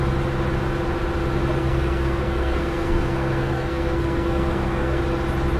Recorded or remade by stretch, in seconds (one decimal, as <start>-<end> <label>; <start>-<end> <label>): 0.0-1.6 recorded; 1.6-5.0 remade; 5.0-5.6 recorded